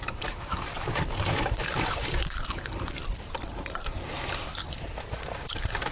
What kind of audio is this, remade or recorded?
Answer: remade